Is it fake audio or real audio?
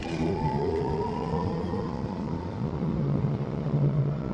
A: fake